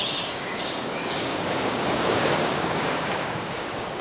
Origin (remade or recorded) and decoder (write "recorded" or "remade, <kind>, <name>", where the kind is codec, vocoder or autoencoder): remade, codec, DAC